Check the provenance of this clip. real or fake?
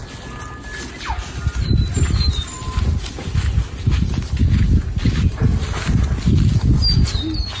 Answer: real